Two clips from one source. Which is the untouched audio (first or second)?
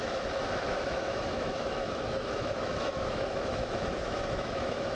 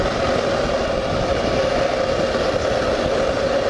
second